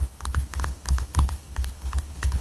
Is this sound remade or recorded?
remade